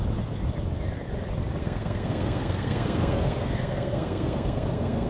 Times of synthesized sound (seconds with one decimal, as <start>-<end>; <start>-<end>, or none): 1.6-5.1